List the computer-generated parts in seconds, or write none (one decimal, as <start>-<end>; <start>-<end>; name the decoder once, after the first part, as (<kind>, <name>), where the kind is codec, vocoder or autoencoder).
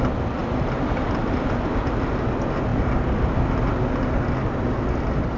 none